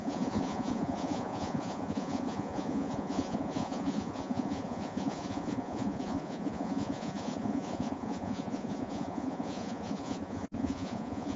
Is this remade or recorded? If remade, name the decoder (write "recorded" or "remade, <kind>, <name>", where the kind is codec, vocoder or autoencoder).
remade, vocoder, Vocos